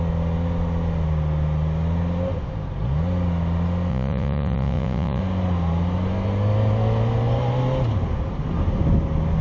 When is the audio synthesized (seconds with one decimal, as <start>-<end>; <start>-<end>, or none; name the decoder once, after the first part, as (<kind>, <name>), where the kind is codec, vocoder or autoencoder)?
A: 3.9-5.2 (vocoder, Vocos)